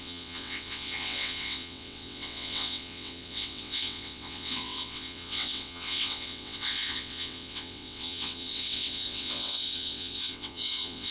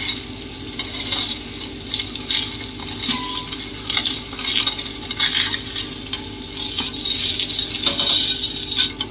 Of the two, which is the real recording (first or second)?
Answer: second